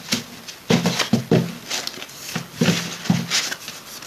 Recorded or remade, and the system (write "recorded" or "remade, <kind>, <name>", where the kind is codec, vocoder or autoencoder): recorded